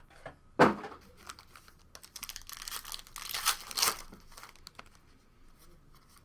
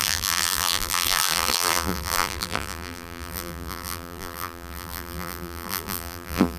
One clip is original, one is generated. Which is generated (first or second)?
second